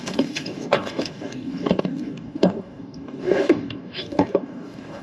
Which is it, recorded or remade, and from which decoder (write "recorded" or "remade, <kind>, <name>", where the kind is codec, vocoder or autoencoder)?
remade, codec, DAC